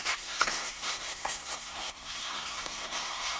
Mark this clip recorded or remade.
remade